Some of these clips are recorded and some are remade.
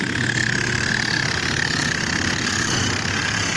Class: recorded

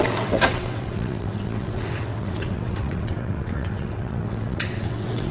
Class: remade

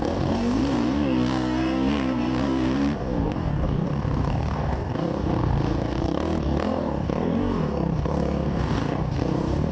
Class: remade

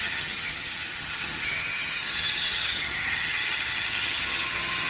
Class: remade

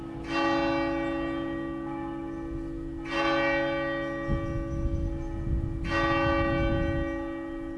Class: recorded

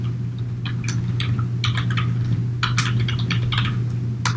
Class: recorded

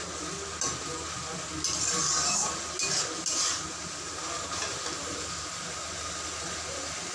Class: recorded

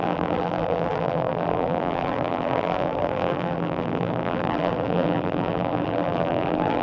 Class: remade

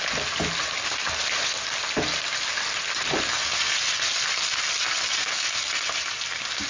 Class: recorded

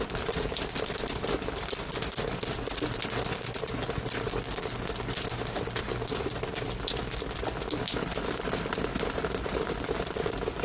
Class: recorded